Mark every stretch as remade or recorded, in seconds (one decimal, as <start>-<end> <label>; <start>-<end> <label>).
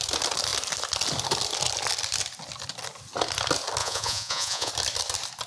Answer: 0.0-3.8 recorded; 3.8-4.7 remade; 4.7-5.5 recorded